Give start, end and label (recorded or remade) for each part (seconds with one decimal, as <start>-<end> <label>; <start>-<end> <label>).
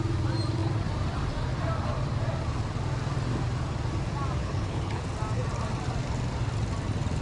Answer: 0.0-4.4 recorded; 4.4-5.0 remade; 5.0-7.2 recorded